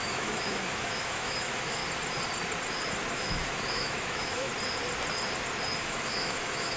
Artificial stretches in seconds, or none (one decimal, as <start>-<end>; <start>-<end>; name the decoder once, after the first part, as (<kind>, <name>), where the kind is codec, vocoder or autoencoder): 0.0-1.8 (autoencoder, DAC-VAE); 3.1-4.5; 5.8-6.8